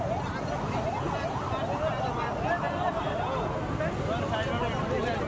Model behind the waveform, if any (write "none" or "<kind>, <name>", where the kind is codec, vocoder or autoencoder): none